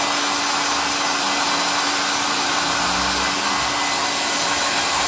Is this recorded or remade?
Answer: recorded